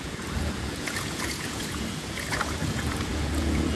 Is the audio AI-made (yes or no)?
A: yes